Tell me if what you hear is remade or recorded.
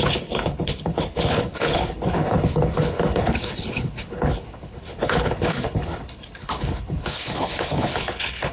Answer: remade